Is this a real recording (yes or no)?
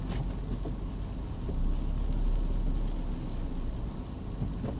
yes